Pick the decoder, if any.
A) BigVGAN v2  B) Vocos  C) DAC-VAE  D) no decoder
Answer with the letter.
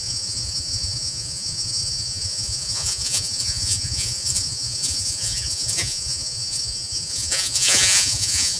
B